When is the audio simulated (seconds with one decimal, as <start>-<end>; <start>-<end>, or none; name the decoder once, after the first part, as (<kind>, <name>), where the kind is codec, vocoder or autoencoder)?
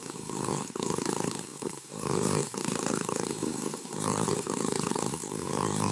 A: 0.0-5.9 (codec, SNAC)